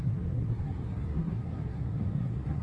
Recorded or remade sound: remade